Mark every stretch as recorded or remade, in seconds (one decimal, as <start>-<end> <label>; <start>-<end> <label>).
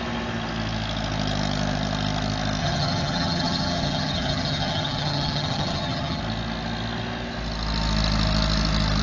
0.0-2.6 recorded; 2.6-6.2 remade; 6.2-9.0 recorded